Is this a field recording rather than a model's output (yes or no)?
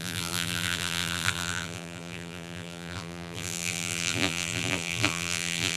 no